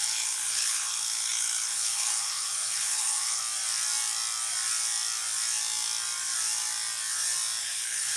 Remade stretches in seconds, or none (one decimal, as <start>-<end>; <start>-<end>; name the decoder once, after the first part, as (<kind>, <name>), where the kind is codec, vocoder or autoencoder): 0.0-3.4 (codec, HILCodec); 7.6-8.2